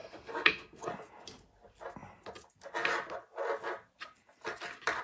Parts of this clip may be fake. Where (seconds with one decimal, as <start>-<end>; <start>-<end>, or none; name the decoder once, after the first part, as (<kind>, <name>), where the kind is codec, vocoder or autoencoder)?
0.0-0.9 (codec, SNAC)